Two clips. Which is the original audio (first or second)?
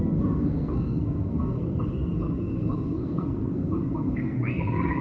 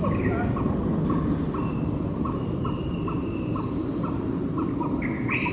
second